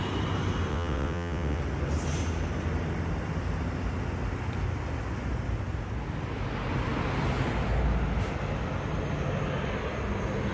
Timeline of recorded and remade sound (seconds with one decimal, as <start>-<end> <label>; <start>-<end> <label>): 0.0-0.7 recorded; 0.7-1.6 remade; 1.6-10.5 recorded